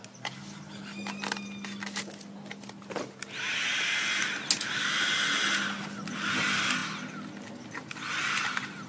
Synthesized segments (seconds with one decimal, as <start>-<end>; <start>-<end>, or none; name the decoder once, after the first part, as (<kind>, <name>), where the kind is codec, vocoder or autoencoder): none